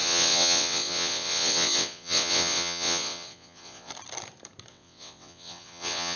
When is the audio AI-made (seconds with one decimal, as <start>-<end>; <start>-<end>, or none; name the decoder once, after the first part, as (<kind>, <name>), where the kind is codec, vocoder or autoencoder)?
0.0-3.9 (vocoder, WaveNeXt); 4.7-6.2